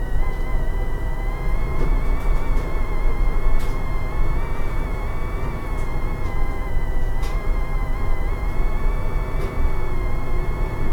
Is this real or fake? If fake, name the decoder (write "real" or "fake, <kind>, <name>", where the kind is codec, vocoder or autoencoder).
real